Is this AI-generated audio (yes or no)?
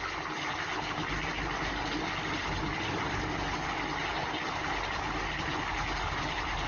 no